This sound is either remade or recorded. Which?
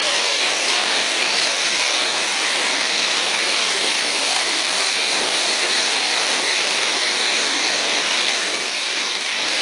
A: remade